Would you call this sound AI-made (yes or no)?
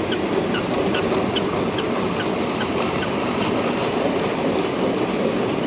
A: no